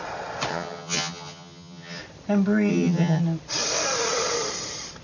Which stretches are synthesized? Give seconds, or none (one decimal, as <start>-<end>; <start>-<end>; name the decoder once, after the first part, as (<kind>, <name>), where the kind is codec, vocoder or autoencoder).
0.5-2.0 (vocoder, HiFi-GAN); 2.7-3.2